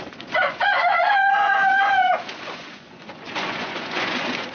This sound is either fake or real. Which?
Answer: fake